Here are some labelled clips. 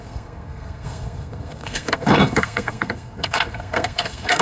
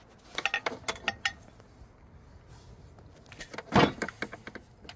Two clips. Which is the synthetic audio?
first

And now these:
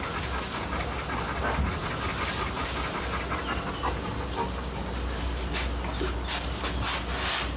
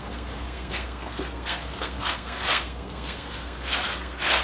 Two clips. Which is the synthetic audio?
second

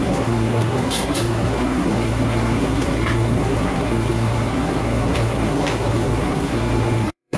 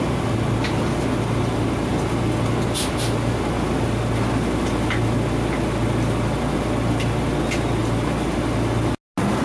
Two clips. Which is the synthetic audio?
first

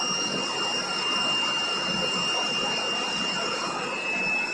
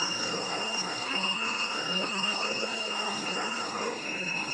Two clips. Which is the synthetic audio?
second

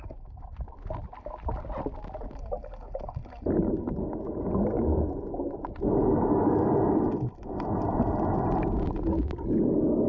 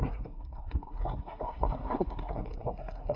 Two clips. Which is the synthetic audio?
second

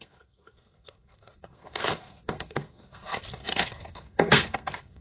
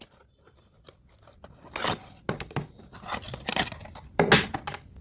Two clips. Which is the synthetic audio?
first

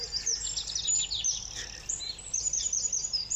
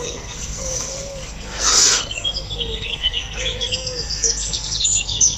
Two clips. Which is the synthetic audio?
second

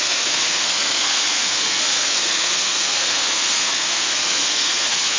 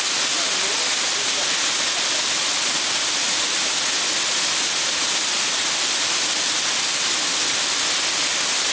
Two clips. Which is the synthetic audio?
first